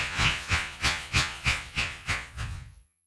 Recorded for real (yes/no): no